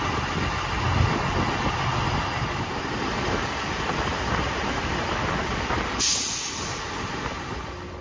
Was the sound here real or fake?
real